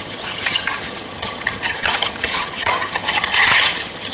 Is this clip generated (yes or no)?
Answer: yes